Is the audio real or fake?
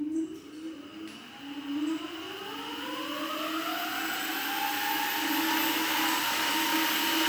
real